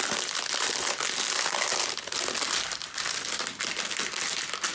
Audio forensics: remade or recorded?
recorded